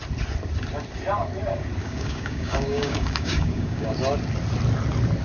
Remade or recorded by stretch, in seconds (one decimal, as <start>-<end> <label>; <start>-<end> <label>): 0.0-1.8 recorded; 1.8-3.9 remade; 3.9-5.2 recorded